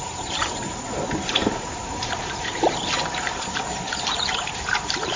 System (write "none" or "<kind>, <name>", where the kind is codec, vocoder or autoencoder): vocoder, BigVGAN v2